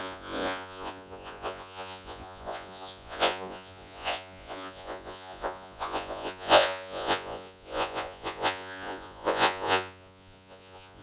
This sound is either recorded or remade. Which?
remade